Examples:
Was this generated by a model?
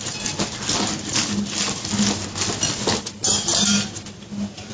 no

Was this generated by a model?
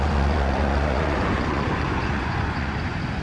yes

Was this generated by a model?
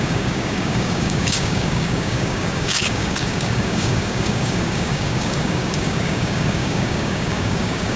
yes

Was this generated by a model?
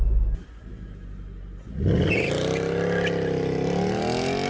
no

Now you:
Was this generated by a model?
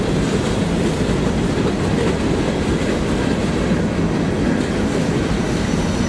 no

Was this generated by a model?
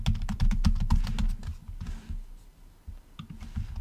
no